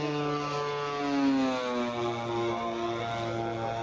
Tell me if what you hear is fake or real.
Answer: real